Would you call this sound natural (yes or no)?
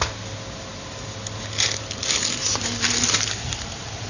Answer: yes